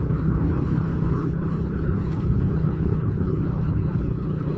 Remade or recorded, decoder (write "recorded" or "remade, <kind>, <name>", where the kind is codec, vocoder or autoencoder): remade, codec, HILCodec